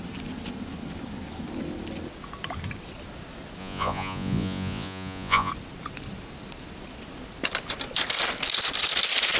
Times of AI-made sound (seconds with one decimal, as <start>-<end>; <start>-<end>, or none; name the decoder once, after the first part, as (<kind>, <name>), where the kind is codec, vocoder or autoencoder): 3.6-5.5 (vocoder, Vocos)